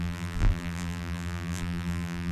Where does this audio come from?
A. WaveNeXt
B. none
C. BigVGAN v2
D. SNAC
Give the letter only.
C